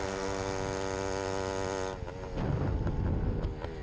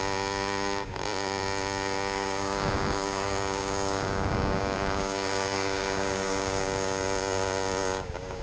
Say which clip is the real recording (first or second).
first